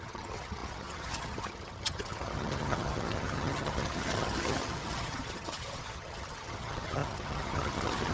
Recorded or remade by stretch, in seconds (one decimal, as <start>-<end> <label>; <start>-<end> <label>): 0.0-8.1 remade